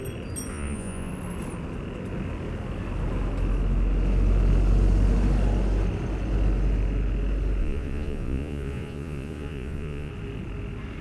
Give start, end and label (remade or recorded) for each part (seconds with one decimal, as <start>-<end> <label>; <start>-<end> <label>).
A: 0.0-0.5 recorded; 0.5-1.1 remade; 1.1-7.6 recorded; 7.6-10.1 remade; 10.1-11.0 recorded